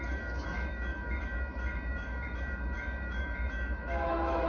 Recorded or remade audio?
remade